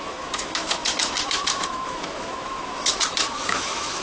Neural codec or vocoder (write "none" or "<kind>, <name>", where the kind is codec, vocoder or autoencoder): autoencoder, DAC-VAE